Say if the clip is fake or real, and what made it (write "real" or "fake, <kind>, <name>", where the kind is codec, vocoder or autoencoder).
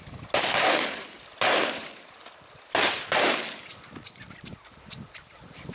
real